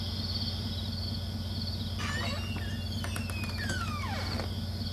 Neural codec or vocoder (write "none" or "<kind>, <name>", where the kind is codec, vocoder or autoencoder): none